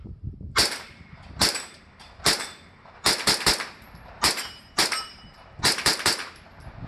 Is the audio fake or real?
fake